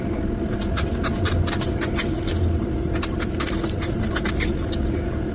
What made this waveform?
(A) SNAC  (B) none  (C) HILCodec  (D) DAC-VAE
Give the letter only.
B